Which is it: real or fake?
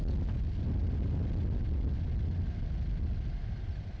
real